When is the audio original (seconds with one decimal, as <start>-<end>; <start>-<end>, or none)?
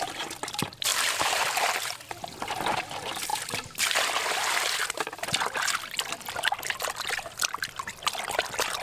0.0-0.9; 2.1-8.8